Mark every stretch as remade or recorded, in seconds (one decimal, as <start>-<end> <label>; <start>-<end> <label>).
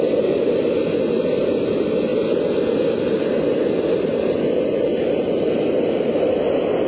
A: 0.0-6.9 recorded